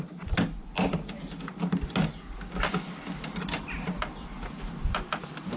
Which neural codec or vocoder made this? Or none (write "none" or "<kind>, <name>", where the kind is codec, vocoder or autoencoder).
none